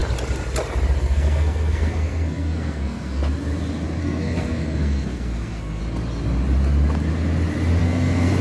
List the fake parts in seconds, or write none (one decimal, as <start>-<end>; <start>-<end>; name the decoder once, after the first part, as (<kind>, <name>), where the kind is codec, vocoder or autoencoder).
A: 1.0-3.2 (codec, SNAC); 4.0-5.8; 7.8-8.4